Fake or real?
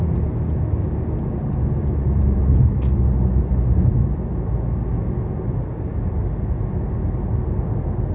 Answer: real